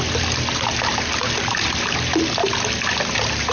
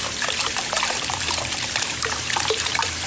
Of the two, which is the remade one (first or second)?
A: second